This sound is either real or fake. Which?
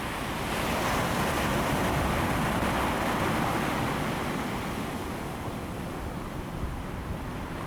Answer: real